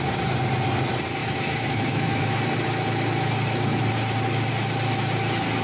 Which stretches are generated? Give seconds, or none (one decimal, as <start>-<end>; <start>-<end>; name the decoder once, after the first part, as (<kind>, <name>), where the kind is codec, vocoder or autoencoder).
1.2-2.4 (autoencoder, DAC-VAE)